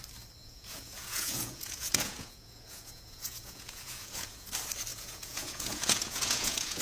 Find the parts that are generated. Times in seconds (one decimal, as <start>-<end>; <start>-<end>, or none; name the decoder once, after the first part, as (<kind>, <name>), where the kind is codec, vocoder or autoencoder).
0.4-4.5 (vocoder, Vocos); 4.9-6.8